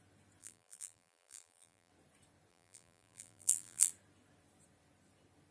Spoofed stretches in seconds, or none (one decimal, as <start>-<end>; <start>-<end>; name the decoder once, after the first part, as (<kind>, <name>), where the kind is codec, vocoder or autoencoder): 0.4-1.9 (vocoder, BigVGAN v2); 2.5-3.9